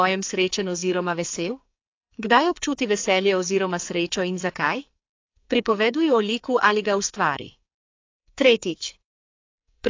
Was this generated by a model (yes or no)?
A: yes